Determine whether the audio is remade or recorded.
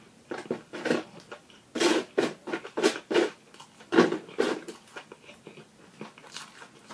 recorded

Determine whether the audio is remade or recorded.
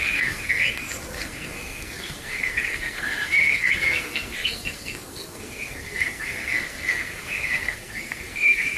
remade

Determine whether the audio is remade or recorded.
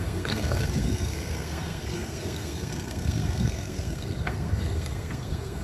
remade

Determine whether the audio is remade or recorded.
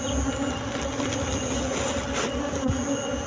recorded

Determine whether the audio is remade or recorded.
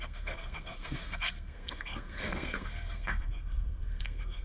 remade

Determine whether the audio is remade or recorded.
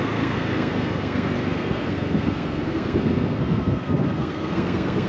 remade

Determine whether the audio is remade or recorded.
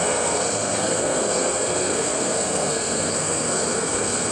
remade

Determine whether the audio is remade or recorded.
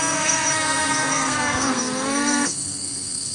remade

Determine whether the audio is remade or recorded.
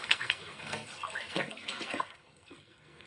remade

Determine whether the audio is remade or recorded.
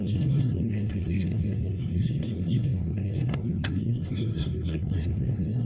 remade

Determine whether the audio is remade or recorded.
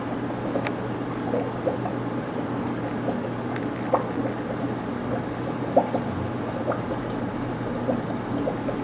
recorded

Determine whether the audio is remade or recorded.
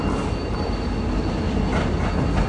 recorded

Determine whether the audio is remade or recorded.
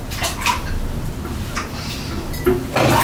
recorded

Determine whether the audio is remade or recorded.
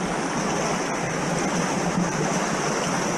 recorded